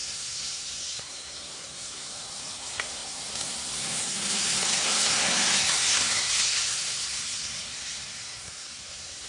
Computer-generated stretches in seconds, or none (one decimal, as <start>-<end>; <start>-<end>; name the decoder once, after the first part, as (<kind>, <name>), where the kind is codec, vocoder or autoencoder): 0.0-9.3 (codec, SNAC)